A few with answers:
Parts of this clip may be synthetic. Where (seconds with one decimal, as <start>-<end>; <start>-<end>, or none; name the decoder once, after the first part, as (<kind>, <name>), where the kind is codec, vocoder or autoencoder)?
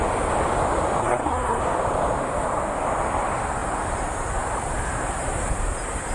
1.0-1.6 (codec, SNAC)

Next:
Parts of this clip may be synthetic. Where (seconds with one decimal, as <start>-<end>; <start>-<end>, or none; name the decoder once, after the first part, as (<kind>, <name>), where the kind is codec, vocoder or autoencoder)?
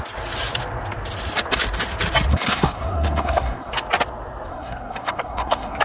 2.3-3.7 (codec, SNAC); 4.5-5.8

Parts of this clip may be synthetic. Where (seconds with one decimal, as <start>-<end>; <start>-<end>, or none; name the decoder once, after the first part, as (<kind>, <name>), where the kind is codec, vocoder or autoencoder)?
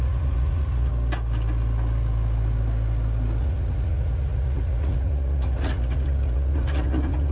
0.0-0.9 (vocoder, Vocos); 3.4-7.3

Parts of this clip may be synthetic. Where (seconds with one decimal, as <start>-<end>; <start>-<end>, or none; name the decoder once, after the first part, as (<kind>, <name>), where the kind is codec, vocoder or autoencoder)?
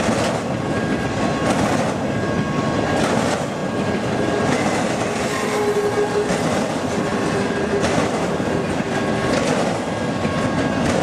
none